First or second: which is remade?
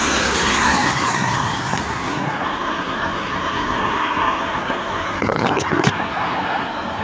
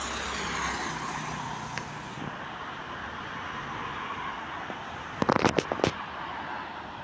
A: first